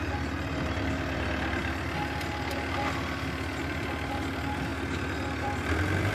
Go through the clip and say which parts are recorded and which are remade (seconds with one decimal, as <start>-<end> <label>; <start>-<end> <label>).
0.0-1.6 remade; 1.6-3.6 recorded; 3.6-4.7 remade; 4.7-5.4 recorded; 5.4-6.1 remade